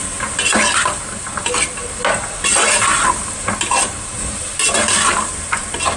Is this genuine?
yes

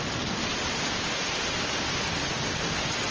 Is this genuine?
yes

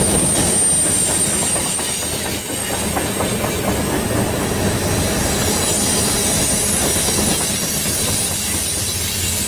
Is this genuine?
yes